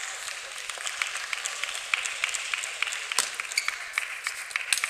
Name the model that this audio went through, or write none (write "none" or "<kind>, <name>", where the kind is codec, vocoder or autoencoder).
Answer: none